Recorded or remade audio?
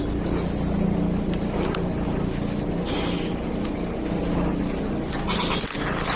recorded